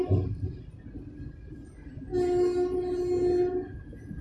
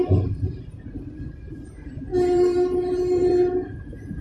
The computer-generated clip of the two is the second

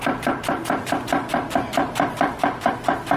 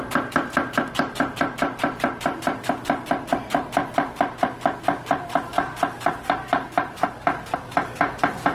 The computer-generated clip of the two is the first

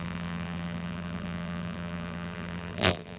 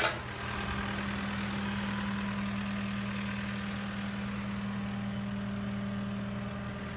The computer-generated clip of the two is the first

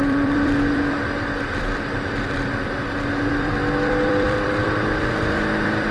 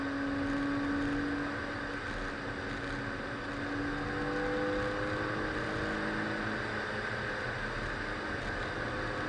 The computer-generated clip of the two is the first